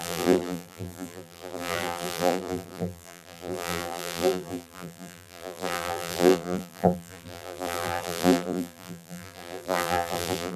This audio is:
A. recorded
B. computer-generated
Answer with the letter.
B